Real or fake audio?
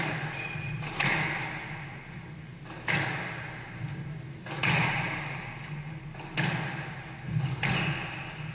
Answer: real